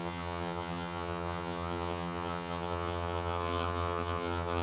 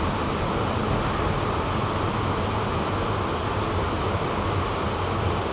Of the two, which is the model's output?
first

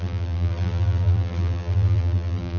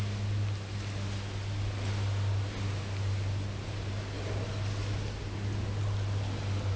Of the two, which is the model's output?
first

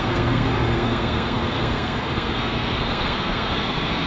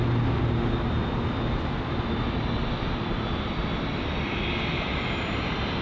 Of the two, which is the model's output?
first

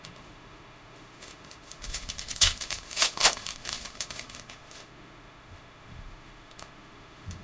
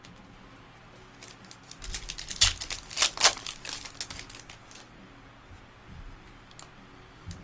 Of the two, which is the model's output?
first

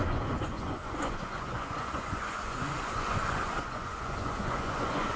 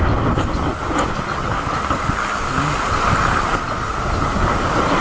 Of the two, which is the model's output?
first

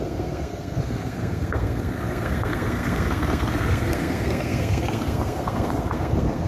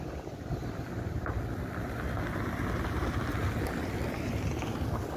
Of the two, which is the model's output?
first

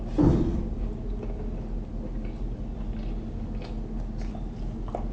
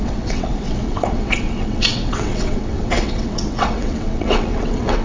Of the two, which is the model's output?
second